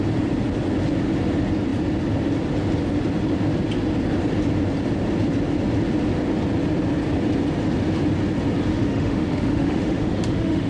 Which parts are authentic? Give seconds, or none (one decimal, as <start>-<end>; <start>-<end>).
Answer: 0.0-8.7